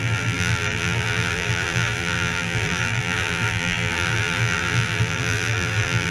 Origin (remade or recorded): remade